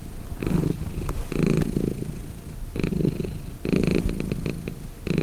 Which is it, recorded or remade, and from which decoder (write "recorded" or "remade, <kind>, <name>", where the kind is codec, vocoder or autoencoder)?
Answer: recorded